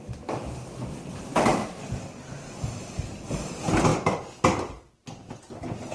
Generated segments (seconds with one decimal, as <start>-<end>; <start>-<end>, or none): none